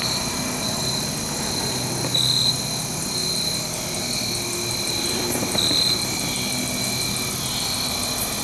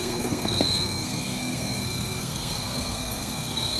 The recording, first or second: first